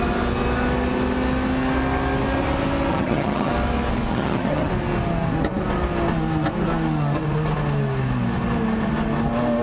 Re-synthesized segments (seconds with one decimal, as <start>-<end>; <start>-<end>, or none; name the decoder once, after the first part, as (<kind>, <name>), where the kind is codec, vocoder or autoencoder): 2.9-3.5 (vocoder, HiFi-GAN); 4.1-4.7